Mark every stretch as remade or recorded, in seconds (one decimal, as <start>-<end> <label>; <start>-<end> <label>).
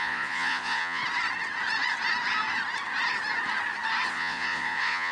0.0-1.0 remade; 1.0-4.1 recorded; 4.1-5.1 remade